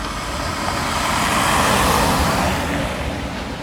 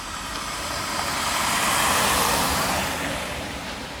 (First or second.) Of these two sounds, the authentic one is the first